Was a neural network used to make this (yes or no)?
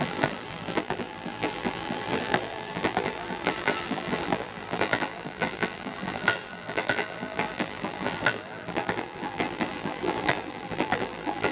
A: yes